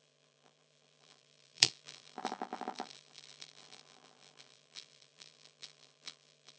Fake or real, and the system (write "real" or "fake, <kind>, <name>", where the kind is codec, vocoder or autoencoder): fake, vocoder, BigVGAN v2